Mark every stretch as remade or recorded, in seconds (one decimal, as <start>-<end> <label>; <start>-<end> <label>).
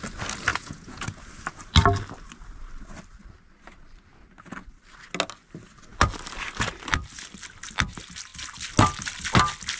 0.0-0.5 recorded; 0.5-1.2 remade; 1.2-9.8 recorded